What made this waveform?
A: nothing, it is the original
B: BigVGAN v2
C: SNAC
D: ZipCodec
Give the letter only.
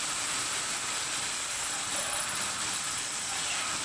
B